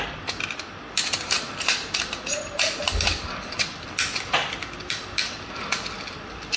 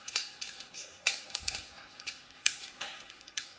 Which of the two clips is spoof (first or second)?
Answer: second